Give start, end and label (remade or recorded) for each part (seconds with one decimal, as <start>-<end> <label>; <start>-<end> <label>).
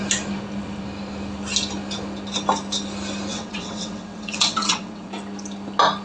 0.0-3.3 recorded; 3.3-5.1 remade; 5.1-6.0 recorded